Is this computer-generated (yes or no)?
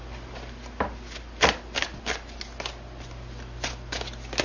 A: no